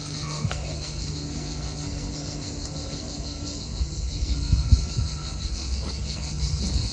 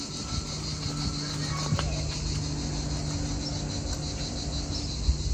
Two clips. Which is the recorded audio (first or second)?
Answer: second